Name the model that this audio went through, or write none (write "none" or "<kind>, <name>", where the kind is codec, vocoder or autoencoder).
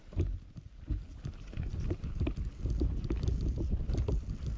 none